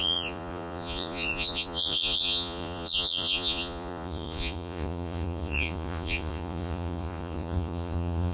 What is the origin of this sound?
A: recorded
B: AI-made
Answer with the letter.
B